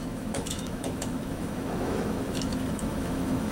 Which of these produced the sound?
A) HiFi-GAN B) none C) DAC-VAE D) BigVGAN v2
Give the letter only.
C